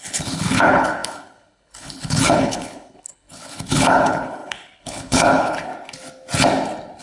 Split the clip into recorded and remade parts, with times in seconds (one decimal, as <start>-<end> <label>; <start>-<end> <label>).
0.0-5.7 remade; 5.7-7.0 recorded